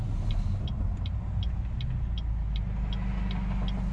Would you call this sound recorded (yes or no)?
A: yes